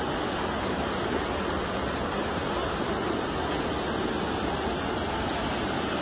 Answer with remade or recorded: recorded